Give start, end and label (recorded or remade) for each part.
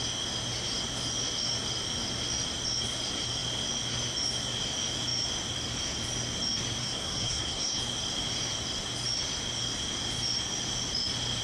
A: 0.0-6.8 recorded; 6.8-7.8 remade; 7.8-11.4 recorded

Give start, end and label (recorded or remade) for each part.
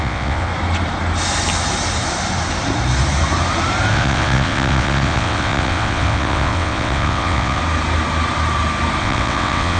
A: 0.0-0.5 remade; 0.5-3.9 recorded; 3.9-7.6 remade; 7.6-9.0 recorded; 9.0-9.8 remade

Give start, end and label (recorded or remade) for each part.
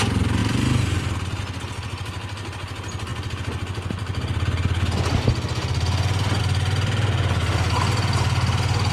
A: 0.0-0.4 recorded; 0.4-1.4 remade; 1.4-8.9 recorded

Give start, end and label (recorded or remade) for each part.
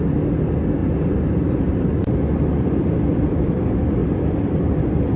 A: 0.0-0.8 recorded; 0.8-3.5 remade; 3.5-4.0 recorded; 4.0-5.2 remade